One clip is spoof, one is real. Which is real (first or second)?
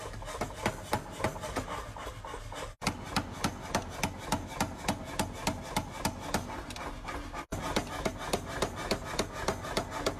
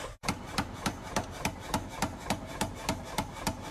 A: first